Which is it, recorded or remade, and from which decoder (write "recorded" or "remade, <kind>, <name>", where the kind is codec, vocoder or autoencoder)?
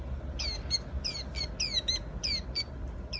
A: recorded